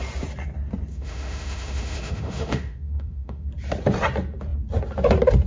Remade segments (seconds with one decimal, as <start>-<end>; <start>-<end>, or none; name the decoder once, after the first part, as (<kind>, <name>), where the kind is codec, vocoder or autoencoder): 0.9-3.5 (autoencoder, DAC-VAE)